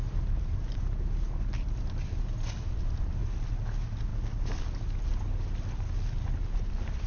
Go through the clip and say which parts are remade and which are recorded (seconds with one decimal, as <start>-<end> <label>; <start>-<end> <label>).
0.0-0.8 remade; 0.8-4.1 recorded; 4.1-4.7 remade; 4.7-7.1 recorded